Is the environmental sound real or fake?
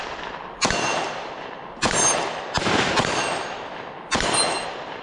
fake